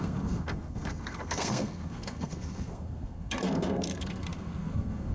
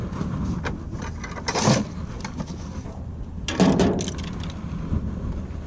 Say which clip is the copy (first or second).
first